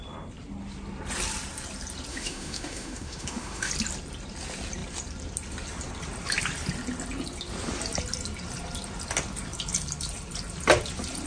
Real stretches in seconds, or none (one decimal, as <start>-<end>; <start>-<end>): 0.0-2.1; 3.7-11.3